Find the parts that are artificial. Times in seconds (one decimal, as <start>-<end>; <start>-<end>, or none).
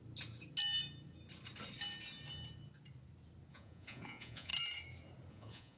3.5-4.5; 5.3-5.8